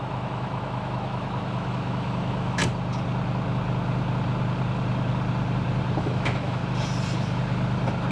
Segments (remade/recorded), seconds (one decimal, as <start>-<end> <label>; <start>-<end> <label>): 0.0-2.6 remade; 2.6-6.0 recorded; 6.0-6.6 remade; 6.6-8.1 recorded